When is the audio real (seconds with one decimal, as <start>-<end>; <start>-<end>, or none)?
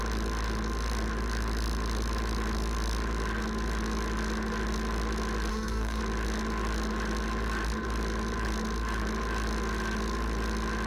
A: 0.0-5.5; 6.0-10.9